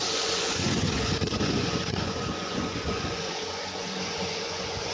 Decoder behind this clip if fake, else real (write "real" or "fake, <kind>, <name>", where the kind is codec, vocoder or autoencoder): fake, vocoder, Vocos